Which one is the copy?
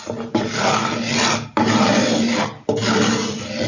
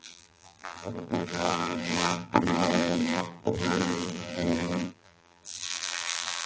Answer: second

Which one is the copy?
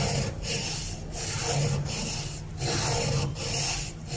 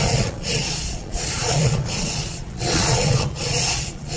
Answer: second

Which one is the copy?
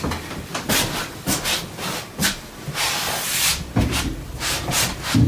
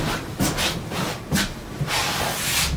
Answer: first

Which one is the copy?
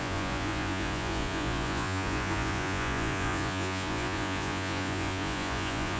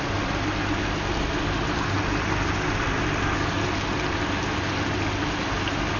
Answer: first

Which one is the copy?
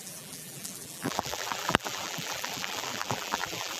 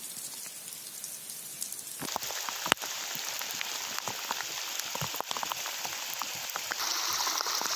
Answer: first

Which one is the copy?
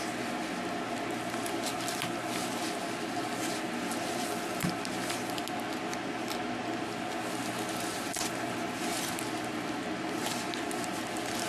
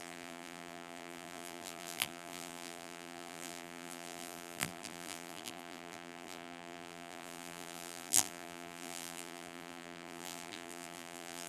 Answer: second